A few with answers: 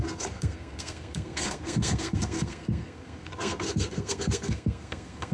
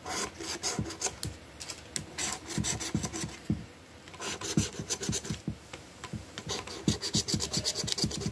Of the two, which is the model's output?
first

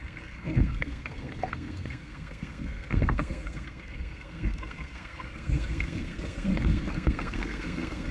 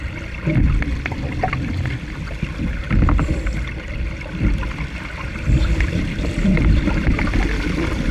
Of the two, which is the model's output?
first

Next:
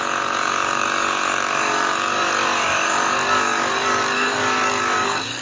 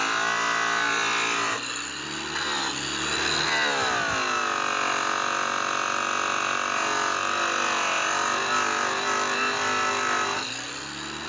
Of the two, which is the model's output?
first